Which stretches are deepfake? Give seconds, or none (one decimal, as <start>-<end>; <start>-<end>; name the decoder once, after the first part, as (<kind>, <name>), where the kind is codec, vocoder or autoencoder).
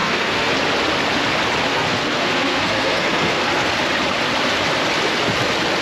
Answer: 0.0-0.5 (codec, SNAC); 1.7-3.7